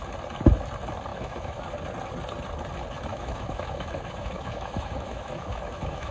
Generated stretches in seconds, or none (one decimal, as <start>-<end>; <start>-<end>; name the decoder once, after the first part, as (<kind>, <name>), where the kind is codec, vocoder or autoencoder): 1.1-1.6 (autoencoder, DAC-VAE); 3.1-6.1